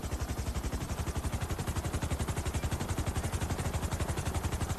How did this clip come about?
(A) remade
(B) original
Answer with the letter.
B